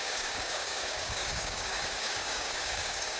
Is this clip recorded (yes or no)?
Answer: no